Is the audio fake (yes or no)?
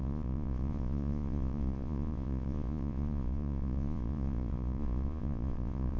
yes